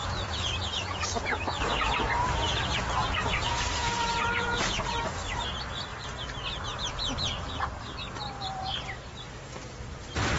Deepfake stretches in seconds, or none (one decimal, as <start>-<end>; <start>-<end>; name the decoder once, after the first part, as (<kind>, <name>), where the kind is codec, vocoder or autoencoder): 0.0-1.4 (vocoder, Vocos); 3.0-4.8